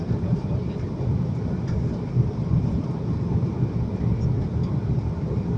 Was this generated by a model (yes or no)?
no